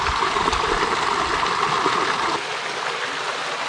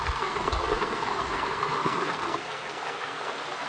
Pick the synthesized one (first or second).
second